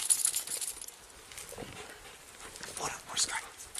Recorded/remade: recorded